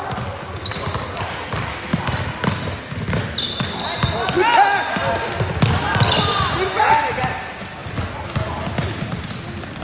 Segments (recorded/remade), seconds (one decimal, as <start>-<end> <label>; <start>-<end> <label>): 0.0-9.8 recorded